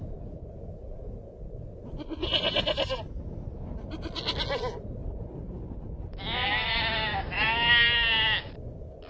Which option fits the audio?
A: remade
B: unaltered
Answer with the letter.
B